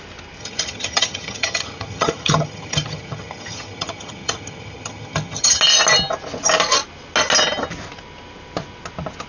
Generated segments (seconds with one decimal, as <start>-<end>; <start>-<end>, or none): 0.4-5.6